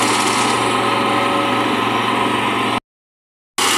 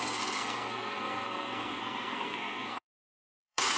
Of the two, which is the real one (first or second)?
first